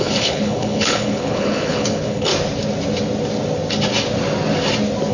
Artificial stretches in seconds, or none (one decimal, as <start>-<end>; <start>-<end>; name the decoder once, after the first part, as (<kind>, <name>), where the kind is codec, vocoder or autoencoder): 0.0-2.3 (codec, HILCodec)